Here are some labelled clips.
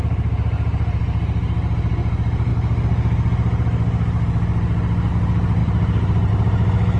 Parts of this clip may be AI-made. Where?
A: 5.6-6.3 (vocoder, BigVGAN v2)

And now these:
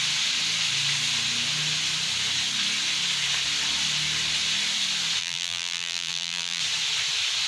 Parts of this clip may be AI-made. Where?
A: 5.2-6.6 (vocoder, BigVGAN v2)

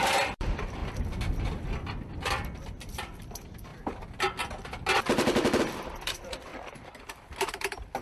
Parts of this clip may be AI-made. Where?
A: 0.0-0.8 (vocoder, BigVGAN v2); 2.1-3.7; 5.6-6.5; 7.0-8.0

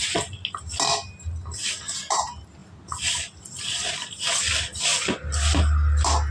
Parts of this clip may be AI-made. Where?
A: none

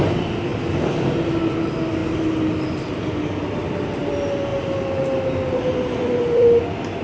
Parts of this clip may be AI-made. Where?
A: 0.5-1.5 (vocoder, BigVGAN v2); 2.0-3.1; 3.6-4.1; 4.5-6.6

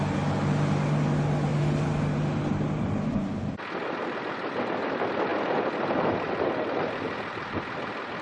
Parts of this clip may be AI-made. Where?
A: none